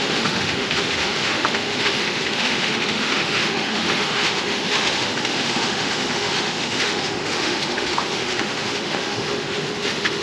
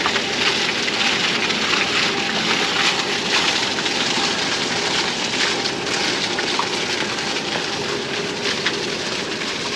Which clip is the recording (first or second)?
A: second